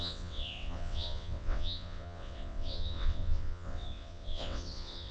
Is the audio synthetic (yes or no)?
yes